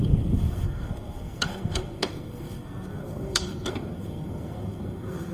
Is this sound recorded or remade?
remade